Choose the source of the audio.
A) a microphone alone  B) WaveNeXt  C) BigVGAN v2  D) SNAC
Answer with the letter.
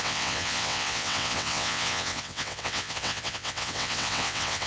B